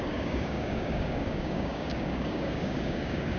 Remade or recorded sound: remade